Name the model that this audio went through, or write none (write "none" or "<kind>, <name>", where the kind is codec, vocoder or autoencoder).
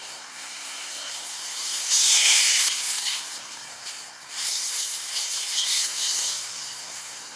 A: codec, SNAC